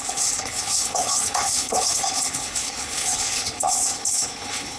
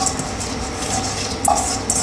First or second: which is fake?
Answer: first